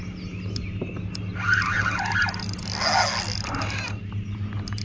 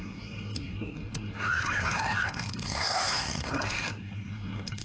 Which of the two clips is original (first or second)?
first